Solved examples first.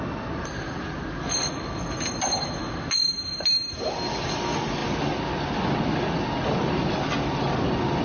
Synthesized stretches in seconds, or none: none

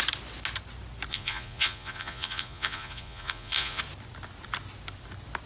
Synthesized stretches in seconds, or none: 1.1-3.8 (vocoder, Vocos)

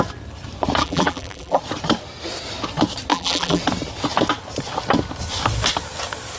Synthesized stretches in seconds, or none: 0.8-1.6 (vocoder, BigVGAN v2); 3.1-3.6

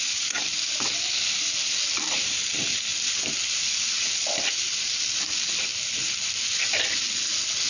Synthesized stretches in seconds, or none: none